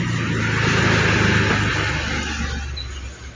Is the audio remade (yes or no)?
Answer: no